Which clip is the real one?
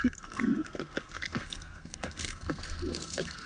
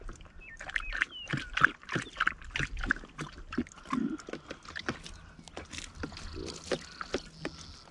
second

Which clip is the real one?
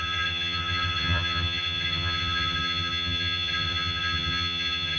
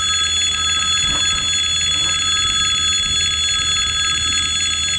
second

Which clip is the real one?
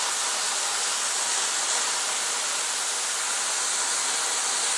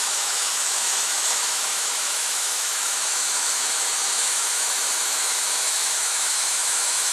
first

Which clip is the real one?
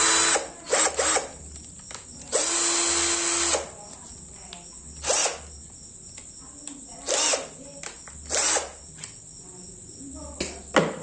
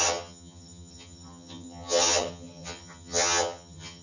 first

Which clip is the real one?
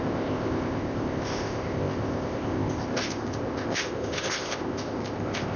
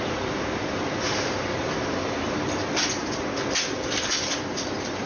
second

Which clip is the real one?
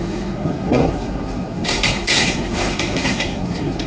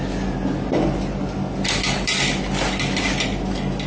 second